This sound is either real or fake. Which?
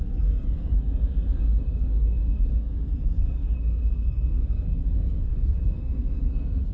fake